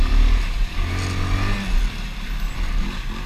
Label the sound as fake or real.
real